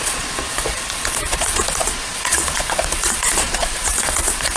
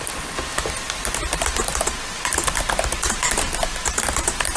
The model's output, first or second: first